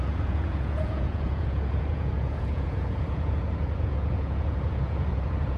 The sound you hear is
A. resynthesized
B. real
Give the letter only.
A